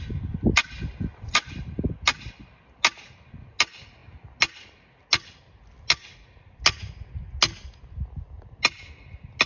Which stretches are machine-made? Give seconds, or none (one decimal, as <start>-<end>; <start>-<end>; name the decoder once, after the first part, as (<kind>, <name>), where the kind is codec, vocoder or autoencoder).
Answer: 1.1-1.9 (vocoder, BigVGAN v2)